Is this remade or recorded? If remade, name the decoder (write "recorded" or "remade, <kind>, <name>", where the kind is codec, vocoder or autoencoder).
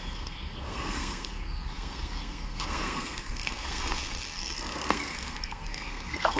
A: remade, codec, SNAC